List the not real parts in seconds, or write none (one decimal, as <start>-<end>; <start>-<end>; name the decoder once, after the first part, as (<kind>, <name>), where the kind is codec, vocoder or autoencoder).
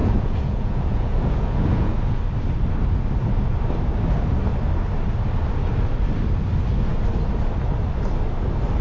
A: 0.0-2.2 (vocoder, Vocos)